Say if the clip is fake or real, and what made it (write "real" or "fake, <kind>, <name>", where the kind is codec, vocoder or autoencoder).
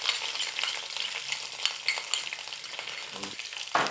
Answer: real